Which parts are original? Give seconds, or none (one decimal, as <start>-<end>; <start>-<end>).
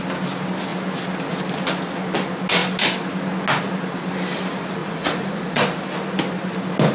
0.0-4.8; 5.8-6.9